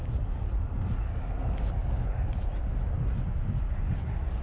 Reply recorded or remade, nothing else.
recorded